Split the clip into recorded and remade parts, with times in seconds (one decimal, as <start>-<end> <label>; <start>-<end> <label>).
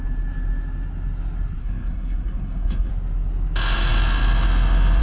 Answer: 0.0-1.6 recorded; 1.6-2.9 remade; 2.9-5.0 recorded